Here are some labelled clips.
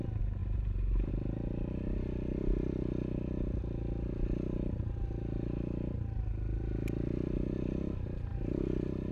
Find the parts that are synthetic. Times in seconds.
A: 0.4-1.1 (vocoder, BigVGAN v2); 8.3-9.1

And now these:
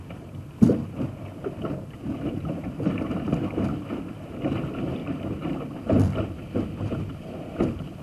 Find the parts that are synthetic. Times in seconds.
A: 0.0-8.0 (vocoder, BigVGAN v2)

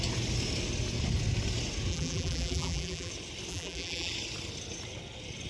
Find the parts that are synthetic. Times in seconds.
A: 1.9-3.1 (vocoder, BigVGAN v2); 3.5-4.1

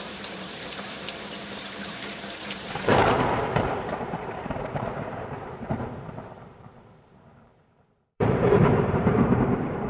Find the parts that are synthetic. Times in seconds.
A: 0.0-9.9 (vocoder, BigVGAN v2)